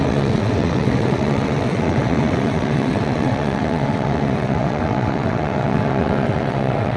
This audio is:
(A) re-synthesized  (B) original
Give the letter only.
A